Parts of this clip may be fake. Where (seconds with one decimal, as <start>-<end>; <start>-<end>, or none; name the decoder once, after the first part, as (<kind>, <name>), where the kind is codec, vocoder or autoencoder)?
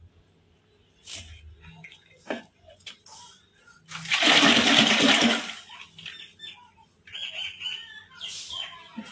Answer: 1.9-2.9 (vocoder, Vocos)